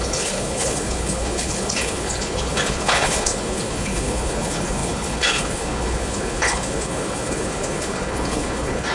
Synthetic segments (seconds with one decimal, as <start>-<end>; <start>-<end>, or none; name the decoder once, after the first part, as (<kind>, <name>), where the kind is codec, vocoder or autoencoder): 0.0-8.9 (codec, HILCodec)